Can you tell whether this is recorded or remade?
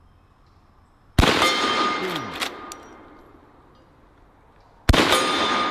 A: recorded